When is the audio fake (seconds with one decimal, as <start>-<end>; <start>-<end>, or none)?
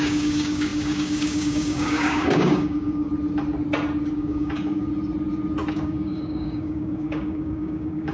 0.0-3.1; 4.1-4.9; 5.7-8.1